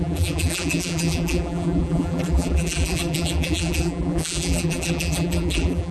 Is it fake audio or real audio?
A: fake